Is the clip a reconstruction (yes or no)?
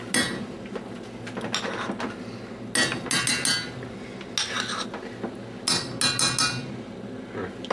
no